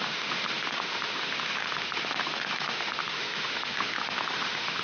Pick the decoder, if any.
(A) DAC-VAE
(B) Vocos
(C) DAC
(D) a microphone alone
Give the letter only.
A